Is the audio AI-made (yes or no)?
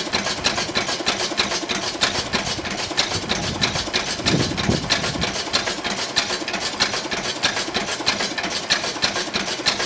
no